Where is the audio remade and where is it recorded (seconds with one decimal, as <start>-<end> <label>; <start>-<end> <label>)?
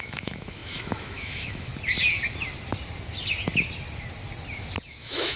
0.0-1.7 remade; 1.7-4.9 recorded; 4.9-5.4 remade